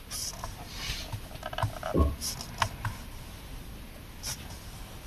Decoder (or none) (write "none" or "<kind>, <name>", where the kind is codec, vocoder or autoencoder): none